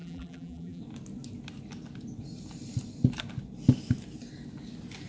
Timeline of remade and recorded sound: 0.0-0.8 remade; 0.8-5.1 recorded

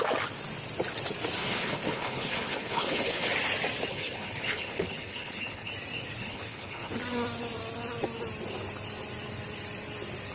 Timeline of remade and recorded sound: 0.0-1.4 recorded; 1.4-3.3 remade; 3.3-3.9 recorded; 3.9-5.7 remade; 5.7-6.2 recorded; 6.2-6.9 remade; 6.9-10.3 recorded